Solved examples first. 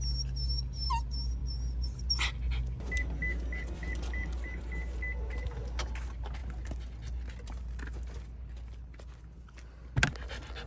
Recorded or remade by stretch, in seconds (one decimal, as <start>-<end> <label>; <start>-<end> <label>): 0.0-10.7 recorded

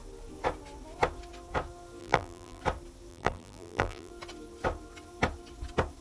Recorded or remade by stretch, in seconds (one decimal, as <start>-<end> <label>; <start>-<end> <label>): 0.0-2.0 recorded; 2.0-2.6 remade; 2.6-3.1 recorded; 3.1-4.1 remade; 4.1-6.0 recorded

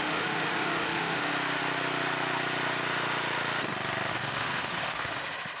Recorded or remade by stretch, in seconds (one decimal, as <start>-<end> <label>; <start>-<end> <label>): 0.0-1.3 remade; 1.3-4.1 recorded; 4.1-5.6 remade

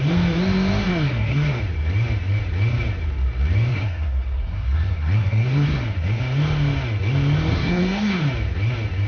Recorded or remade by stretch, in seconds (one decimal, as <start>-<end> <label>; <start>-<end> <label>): 0.0-0.9 recorded; 0.9-1.6 remade; 1.6-3.7 recorded; 3.7-6.2 remade; 6.2-7.5 recorded; 7.5-8.2 remade; 8.2-9.1 recorded